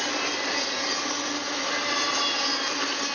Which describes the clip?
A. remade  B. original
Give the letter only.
B